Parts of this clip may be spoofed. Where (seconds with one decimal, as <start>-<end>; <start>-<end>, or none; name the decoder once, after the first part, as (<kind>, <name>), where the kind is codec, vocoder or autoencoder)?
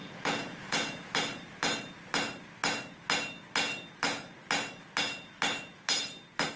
0.0-1.1 (vocoder, Vocos)